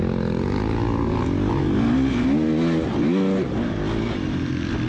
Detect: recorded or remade recorded